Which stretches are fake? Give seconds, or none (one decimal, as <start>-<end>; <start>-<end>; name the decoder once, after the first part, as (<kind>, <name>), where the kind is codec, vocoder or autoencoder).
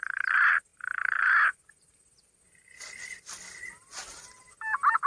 none